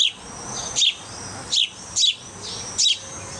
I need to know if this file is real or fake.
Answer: real